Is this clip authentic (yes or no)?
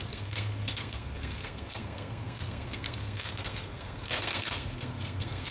no